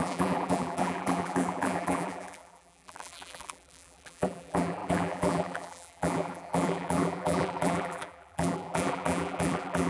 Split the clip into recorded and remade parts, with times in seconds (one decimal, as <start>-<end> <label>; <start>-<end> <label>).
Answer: 0.0-9.9 remade